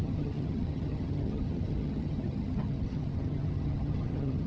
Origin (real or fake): fake